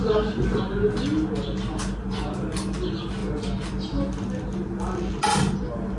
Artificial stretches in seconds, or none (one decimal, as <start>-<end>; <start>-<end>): none